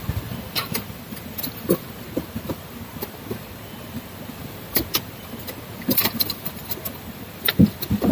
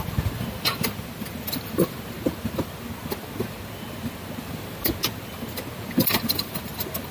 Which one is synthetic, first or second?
first